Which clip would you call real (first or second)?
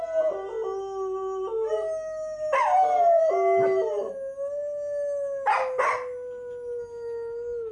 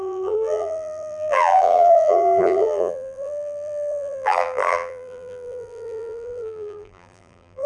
first